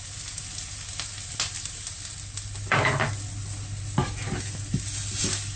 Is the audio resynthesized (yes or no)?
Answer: no